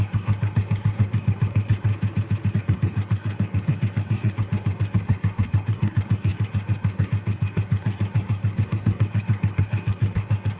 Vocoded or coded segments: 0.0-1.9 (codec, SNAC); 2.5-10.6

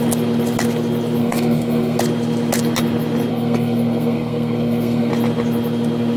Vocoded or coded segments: 1.2-2.0 (codec, SNAC); 3.3-5.1

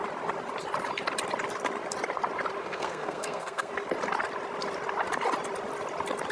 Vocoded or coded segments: 2.6-3.7 (codec, SNAC)

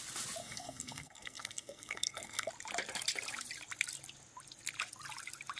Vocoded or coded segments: 0.4-2.5 (codec, SNAC)

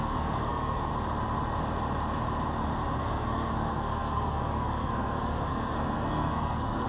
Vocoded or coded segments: 0.0-0.9 (codec, SNAC); 3.0-6.9

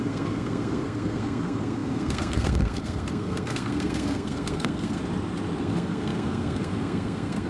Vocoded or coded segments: 0.0-5.0 (codec, SNAC); 5.6-7.5

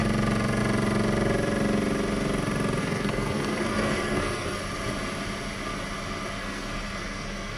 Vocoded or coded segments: 2.8-4.6 (codec, SNAC); 6.4-7.6

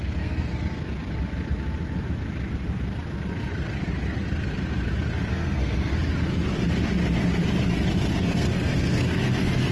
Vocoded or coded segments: 0.0-0.5 (codec, SNAC); 5.3-5.9; 8.2-9.7